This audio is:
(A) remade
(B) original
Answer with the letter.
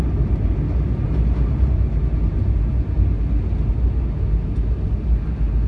B